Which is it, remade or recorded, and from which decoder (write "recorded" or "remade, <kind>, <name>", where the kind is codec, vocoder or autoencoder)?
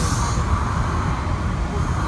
recorded